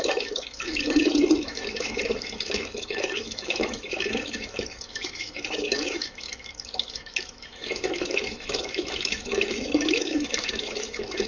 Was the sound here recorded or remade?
remade